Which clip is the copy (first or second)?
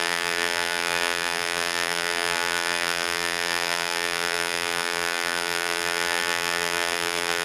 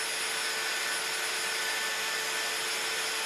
first